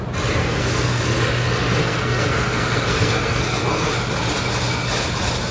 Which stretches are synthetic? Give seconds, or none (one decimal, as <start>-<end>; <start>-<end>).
0.4-1.0; 1.8-3.9